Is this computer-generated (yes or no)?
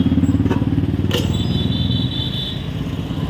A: no